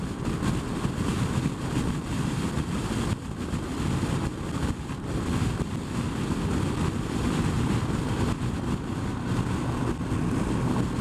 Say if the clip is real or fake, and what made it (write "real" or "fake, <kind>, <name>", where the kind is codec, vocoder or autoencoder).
real